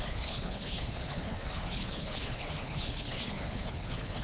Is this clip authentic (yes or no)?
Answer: no